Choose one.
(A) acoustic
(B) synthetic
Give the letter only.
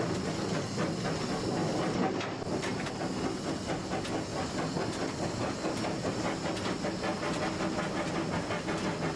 A